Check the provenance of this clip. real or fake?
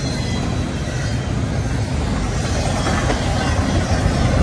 real